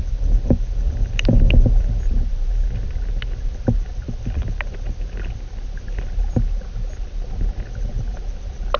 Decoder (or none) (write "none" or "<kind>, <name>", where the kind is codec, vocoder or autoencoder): none